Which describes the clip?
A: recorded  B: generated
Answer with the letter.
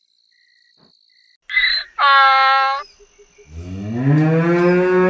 A